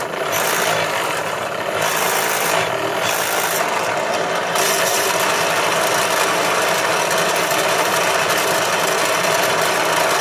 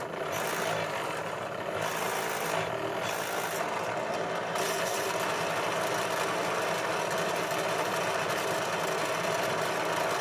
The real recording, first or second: second